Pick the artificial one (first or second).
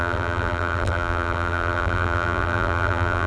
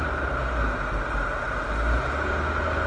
first